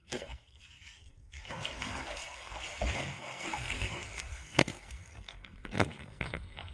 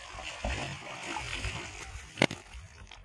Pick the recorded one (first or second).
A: second